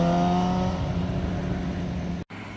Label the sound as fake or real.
real